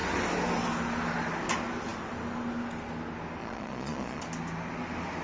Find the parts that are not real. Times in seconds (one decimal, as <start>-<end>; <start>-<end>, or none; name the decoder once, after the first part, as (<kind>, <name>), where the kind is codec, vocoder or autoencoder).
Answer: 3.4-4.2 (vocoder, Vocos)